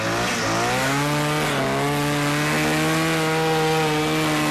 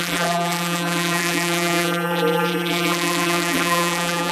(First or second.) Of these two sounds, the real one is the first